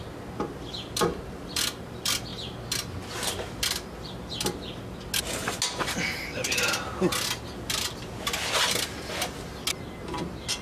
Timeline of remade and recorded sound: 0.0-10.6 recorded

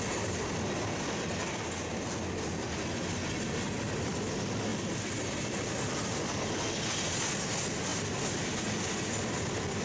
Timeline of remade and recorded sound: 0.0-4.7 recorded; 4.7-6.6 remade; 6.6-9.8 recorded

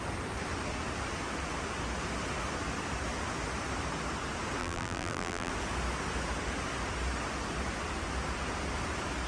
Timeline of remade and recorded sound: 0.0-4.6 recorded; 4.6-5.5 remade; 5.5-9.3 recorded

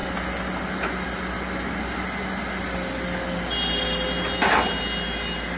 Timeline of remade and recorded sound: 0.0-5.6 recorded